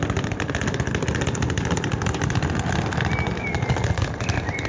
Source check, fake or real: real